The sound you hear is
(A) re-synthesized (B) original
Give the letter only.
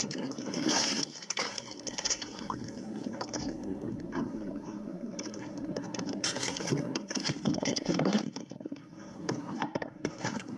A